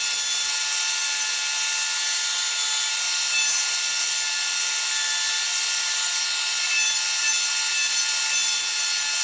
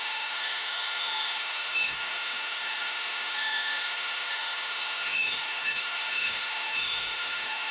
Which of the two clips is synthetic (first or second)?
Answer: second